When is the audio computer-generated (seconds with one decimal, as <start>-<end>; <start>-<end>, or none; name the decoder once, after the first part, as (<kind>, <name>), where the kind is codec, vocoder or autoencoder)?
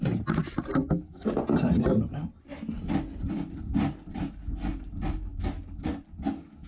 none